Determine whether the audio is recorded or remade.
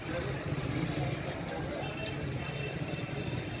recorded